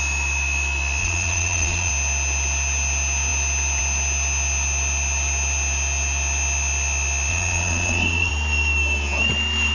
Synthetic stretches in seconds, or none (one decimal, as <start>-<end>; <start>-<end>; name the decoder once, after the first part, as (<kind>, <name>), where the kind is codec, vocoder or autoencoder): 1.0-1.9 (vocoder, Vocos); 7.3-8.3